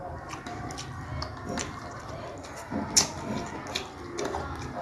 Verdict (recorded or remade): recorded